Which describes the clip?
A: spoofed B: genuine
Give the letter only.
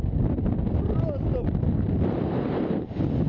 B